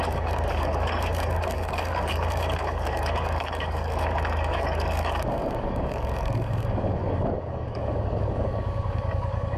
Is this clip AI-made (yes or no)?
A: yes